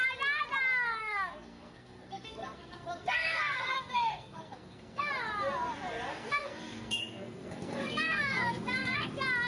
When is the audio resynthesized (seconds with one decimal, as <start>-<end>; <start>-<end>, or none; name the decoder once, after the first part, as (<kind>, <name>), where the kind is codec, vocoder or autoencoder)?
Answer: 1.0-5.1 (codec, SNAC); 6.1-9.1